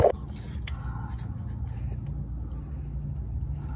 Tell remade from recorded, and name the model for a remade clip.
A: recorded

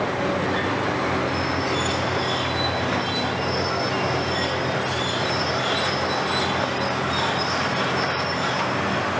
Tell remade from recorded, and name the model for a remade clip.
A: recorded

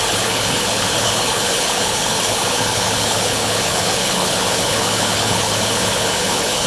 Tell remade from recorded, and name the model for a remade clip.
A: remade, codec, HILCodec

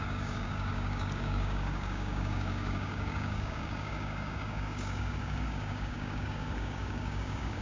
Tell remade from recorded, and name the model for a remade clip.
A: remade, codec, DAC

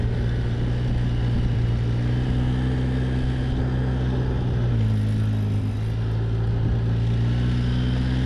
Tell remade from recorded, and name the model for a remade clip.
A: recorded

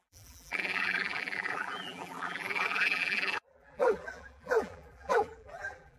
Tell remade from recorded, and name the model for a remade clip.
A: remade, vocoder, BigVGAN v2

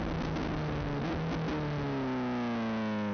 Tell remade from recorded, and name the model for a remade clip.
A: recorded